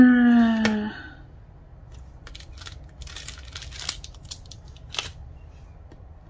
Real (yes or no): yes